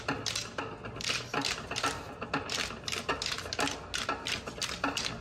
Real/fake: real